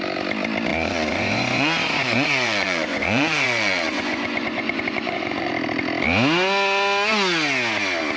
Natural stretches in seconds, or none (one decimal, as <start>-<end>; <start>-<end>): 0.0-0.7; 5.5-8.2